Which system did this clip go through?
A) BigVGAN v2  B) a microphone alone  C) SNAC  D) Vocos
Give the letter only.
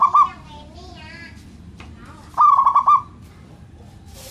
A